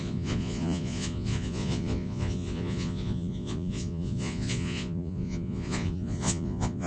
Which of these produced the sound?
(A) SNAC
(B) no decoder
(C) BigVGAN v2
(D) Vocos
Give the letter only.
D